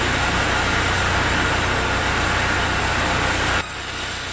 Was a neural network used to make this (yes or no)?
no